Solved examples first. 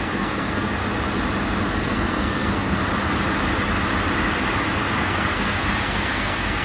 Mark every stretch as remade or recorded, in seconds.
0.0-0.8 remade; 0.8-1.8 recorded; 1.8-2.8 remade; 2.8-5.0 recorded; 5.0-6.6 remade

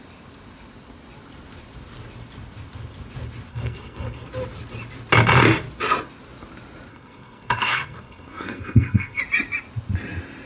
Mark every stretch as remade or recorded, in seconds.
0.0-3.5 recorded; 3.5-4.3 remade; 4.3-6.9 recorded; 6.9-9.2 remade; 9.2-10.5 recorded

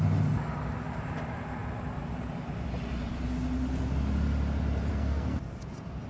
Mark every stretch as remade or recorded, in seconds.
0.0-4.9 recorded; 4.9-5.4 remade; 5.4-6.1 recorded

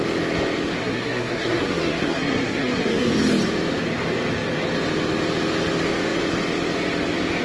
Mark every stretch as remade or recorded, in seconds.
0.0-0.8 recorded; 0.8-3.1 remade; 3.1-7.4 recorded

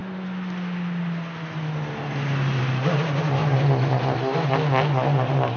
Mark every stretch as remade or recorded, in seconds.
0.0-5.6 recorded

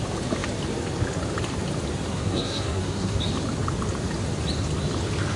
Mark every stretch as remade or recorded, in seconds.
0.0-2.1 recorded; 2.1-3.2 remade; 3.2-5.4 recorded

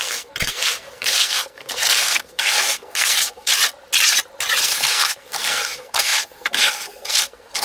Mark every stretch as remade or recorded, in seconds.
0.0-3.5 remade; 3.5-4.6 recorded; 4.6-7.6 remade